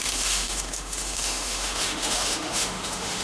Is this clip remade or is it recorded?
remade